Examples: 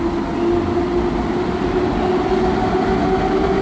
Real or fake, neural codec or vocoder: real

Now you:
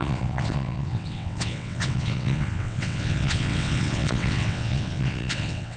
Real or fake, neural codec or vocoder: fake, vocoder, WaveNeXt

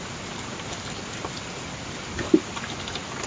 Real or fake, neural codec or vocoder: real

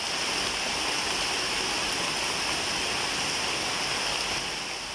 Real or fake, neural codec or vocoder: real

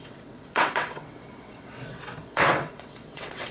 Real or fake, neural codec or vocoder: fake, vocoder, WaveNeXt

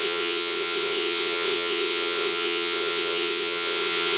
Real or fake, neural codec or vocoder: fake, vocoder, WaveNeXt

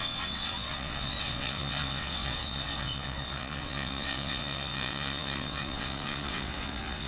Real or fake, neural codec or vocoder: fake, vocoder, WaveNeXt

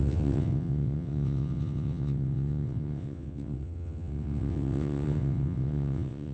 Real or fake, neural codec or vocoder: fake, vocoder, WaveNeXt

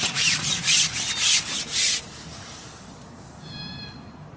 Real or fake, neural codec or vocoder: real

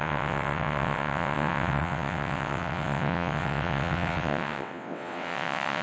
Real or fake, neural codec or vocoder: fake, vocoder, WaveNeXt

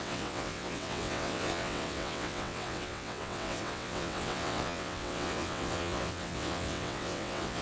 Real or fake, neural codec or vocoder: fake, vocoder, WaveNeXt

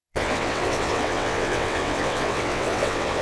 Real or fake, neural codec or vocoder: fake, vocoder, WaveNeXt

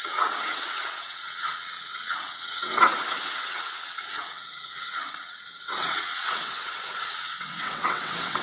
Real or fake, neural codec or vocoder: fake, vocoder, WaveNeXt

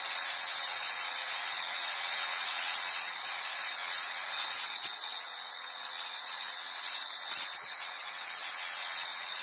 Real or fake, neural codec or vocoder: fake, vocoder, WaveNeXt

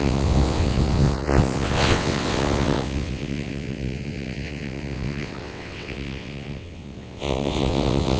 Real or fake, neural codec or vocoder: fake, vocoder, WaveNeXt